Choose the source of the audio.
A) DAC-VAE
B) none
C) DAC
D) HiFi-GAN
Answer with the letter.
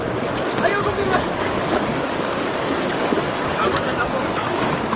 C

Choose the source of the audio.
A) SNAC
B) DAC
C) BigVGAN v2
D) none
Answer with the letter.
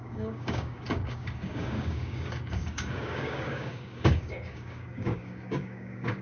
B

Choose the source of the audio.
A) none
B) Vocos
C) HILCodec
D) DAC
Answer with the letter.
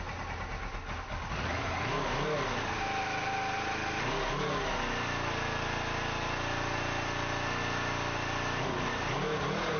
A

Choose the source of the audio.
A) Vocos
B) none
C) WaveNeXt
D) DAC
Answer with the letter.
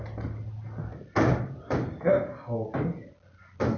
B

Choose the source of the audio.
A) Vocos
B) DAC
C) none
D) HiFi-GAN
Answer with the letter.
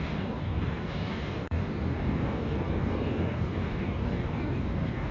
B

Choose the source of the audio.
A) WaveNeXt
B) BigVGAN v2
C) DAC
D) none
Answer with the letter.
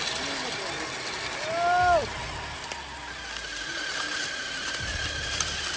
D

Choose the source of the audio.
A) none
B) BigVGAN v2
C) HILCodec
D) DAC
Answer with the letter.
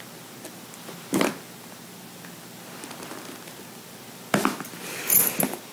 A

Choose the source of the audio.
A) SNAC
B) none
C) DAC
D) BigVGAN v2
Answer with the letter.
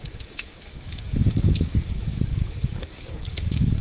C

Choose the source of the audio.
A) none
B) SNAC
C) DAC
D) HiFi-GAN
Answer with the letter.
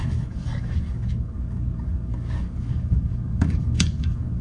C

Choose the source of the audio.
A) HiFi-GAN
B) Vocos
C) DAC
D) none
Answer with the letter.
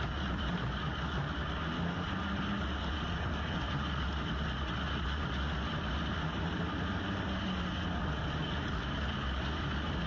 D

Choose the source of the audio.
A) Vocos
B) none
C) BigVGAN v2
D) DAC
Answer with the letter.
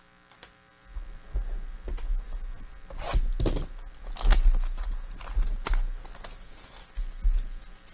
B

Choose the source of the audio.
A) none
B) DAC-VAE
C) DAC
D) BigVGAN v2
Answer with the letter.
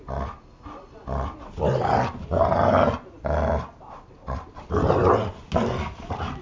A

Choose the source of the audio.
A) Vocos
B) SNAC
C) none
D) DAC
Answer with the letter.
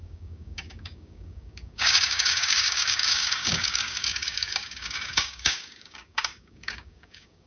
D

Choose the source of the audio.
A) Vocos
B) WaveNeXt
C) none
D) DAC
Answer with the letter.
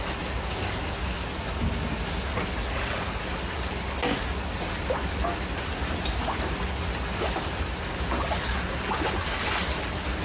C